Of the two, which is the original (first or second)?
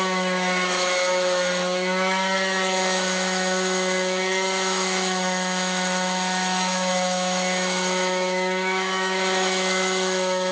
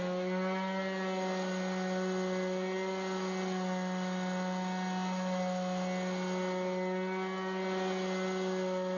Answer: second